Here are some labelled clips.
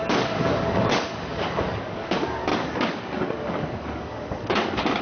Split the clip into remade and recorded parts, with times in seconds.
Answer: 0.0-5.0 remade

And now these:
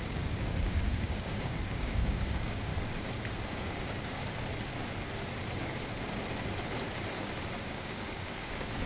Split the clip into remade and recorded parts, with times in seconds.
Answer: 0.0-2.7 remade; 2.7-3.5 recorded; 3.5-4.2 remade; 4.2-7.6 recorded; 7.6-8.9 remade